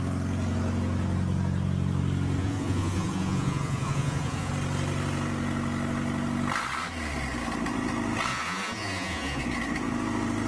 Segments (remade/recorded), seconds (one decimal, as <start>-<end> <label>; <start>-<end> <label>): 0.0-2.4 recorded; 2.4-4.5 remade; 4.5-8.3 recorded; 8.3-9.4 remade; 9.4-10.5 recorded